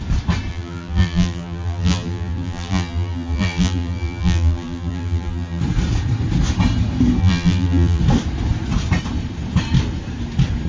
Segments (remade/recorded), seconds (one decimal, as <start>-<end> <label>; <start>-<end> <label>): 0.0-0.5 recorded; 0.5-5.6 remade; 5.6-7.2 recorded; 7.2-8.0 remade; 8.0-10.7 recorded